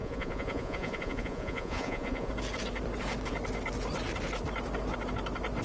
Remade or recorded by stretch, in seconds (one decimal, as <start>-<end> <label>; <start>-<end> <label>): 0.0-2.3 remade; 2.3-5.6 recorded